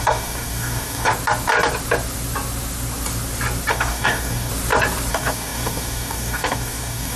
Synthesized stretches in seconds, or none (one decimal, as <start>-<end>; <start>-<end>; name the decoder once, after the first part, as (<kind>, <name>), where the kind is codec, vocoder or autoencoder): 0.0-1.1 (codec, DAC); 3.7-4.5; 5.1-7.2